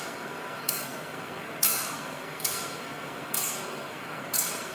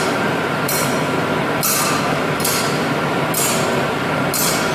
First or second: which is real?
second